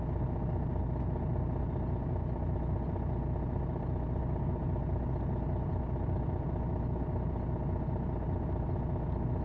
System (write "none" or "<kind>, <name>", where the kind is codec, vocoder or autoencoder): none